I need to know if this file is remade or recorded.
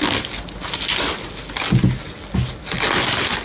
recorded